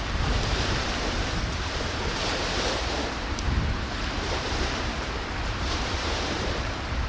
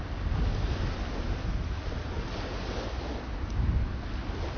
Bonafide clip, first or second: second